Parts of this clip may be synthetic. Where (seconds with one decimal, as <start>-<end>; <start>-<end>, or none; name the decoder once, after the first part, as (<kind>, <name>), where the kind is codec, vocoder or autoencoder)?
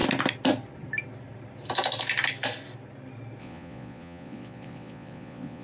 3.4-5.6 (vocoder, Vocos)